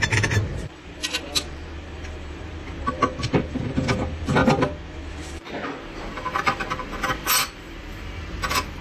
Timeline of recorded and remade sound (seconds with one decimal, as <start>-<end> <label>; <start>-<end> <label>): 0.0-4.4 remade; 4.4-5.1 recorded; 5.1-8.8 remade

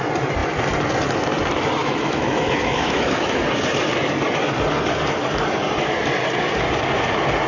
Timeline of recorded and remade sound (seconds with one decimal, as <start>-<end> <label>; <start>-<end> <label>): 0.0-1.8 recorded; 1.8-3.4 remade; 3.4-7.5 recorded